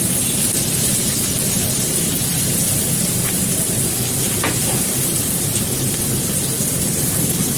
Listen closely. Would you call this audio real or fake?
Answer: fake